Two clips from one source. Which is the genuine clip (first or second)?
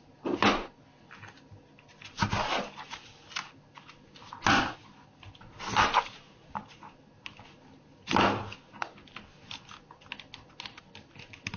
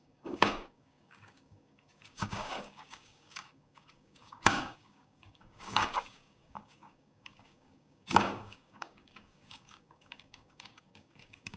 first